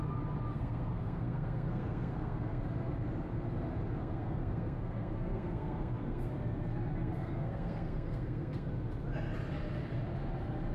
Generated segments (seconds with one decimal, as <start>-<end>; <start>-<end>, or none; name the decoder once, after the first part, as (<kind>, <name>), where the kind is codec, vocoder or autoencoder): 0.5-2.6 (codec, SNAC); 4.0-6.3; 7.0-8.7